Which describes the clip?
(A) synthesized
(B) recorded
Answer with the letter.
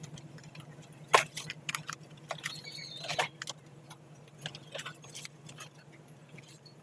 B